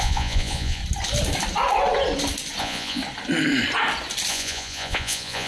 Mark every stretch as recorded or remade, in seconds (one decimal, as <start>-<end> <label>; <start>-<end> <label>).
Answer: 0.0-0.8 remade; 0.8-2.6 recorded; 2.6-3.0 remade; 3.0-4.3 recorded; 4.3-5.5 remade